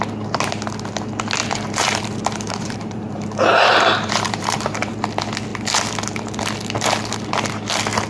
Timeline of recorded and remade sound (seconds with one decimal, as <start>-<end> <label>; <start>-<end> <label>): 0.0-1.4 recorded; 1.4-4.9 remade; 4.9-8.1 recorded

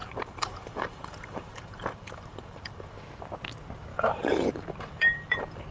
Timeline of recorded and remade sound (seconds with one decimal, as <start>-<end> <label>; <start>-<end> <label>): 0.0-3.0 remade; 3.0-3.9 recorded; 3.9-5.7 remade

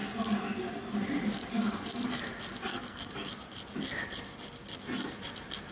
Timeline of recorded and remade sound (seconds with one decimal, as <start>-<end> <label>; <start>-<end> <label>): 0.0-2.7 recorded; 2.7-3.3 remade; 3.3-5.7 recorded